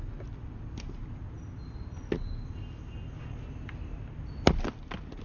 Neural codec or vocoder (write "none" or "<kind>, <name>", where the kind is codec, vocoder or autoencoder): none